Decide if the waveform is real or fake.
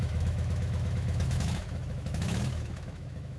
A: fake